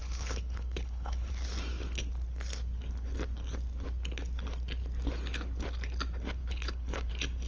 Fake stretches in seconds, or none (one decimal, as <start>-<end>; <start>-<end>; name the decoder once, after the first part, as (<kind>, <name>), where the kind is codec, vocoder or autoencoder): 0.0-1.3 (codec, HILCodec); 6.4-7.1